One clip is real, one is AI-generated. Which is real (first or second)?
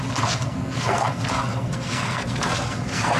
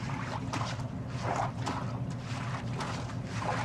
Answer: second